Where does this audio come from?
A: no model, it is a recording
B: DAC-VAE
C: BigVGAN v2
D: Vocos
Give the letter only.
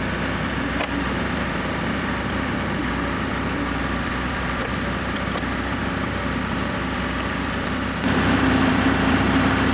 C